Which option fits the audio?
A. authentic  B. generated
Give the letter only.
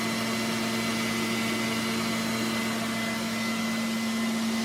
A